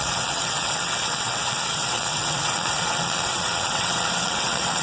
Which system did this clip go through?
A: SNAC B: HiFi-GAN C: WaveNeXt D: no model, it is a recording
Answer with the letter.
C